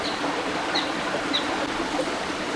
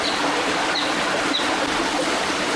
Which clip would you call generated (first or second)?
first